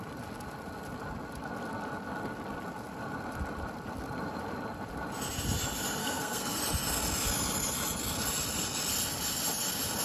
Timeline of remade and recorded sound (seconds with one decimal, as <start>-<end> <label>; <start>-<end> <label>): 0.0-6.0 recorded; 6.0-6.6 remade; 6.6-10.0 recorded